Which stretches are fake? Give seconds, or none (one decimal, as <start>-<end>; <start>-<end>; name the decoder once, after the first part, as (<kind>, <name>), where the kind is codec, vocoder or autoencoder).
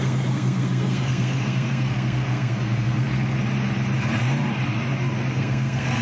0.0-3.4 (codec, SNAC); 5.3-6.0